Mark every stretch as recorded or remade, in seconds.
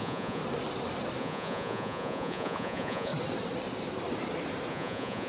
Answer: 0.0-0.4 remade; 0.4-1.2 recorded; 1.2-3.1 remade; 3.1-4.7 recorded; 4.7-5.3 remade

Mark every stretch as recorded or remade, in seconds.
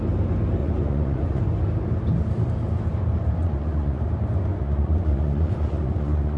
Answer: 0.0-0.6 recorded; 0.6-1.4 remade; 1.4-3.4 recorded; 3.4-4.0 remade; 4.0-4.5 recorded; 4.5-6.4 remade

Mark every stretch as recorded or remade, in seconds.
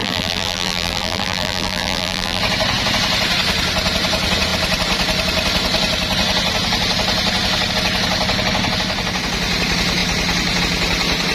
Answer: 0.0-2.4 remade; 2.4-11.3 recorded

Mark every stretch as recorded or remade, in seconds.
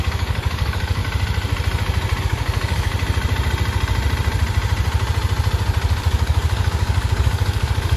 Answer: 0.0-1.0 remade; 1.0-2.2 recorded; 2.2-2.9 remade; 2.9-6.0 recorded; 6.0-8.0 remade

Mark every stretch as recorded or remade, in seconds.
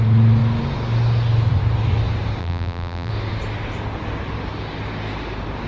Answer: 0.0-2.4 recorded; 2.4-3.1 remade; 3.1-5.7 recorded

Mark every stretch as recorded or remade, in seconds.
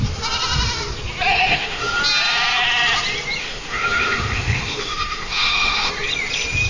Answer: 0.0-1.3 recorded; 1.3-2.0 remade; 2.0-3.4 recorded; 3.4-5.9 remade; 5.9-6.7 recorded